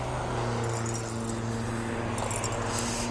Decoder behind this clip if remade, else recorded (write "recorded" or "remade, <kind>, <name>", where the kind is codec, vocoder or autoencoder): recorded